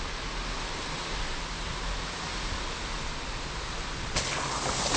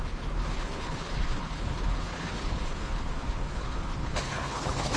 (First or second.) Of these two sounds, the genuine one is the first